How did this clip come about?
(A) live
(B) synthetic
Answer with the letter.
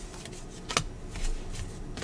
A